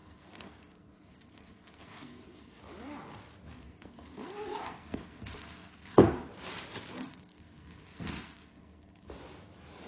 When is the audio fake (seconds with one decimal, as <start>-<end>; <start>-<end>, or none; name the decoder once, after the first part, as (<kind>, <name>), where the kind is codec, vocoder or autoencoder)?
0.0-2.6 (codec, SNAC); 3.5-6.3; 7.0-9.1